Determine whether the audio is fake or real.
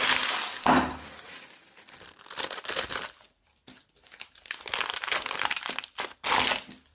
real